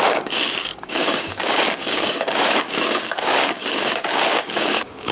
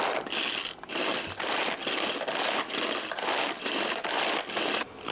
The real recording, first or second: second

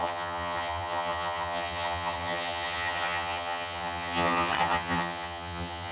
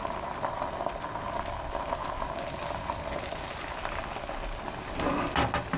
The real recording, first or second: second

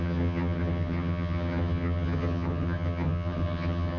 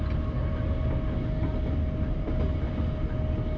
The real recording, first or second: second